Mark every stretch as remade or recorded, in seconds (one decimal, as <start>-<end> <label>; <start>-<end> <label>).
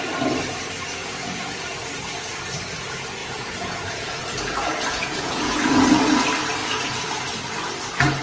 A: 0.0-1.0 recorded; 1.0-1.6 remade; 1.6-3.2 recorded; 3.2-5.8 remade; 5.8-6.6 recorded; 6.6-7.1 remade; 7.1-8.2 recorded